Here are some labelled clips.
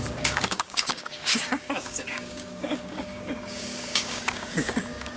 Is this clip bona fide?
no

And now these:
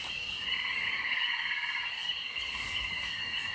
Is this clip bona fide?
no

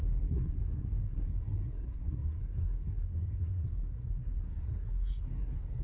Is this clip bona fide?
no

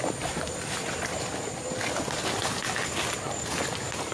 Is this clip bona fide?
yes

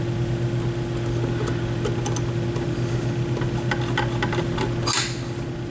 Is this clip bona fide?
yes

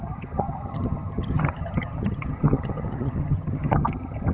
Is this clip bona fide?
no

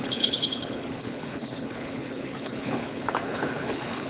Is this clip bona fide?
no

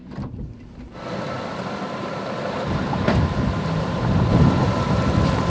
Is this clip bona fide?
no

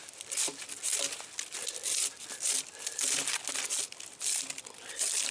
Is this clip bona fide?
yes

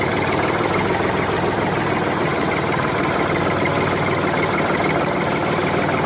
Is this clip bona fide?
no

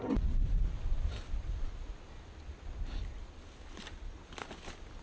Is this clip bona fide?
yes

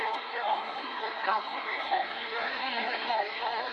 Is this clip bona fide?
no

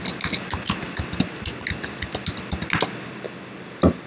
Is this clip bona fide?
yes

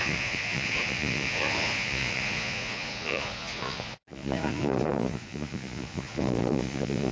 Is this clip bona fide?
no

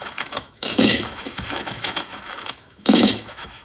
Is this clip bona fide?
no